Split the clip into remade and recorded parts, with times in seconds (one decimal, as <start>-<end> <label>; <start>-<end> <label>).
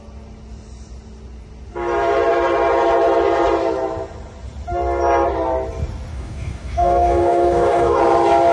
0.0-6.1 recorded; 6.1-8.0 remade; 8.0-8.5 recorded